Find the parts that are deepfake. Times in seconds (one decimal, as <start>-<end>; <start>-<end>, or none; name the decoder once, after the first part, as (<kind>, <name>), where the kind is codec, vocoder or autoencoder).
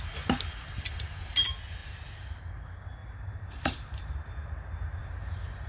3.0-4.0 (vocoder, BigVGAN v2); 5.0-5.7